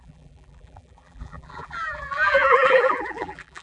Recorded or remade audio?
remade